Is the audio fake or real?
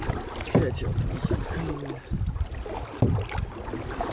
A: real